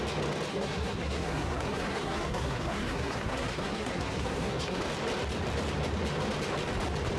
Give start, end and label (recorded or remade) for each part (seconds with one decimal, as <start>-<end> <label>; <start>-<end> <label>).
0.0-0.5 recorded; 0.5-4.8 remade; 4.8-7.2 recorded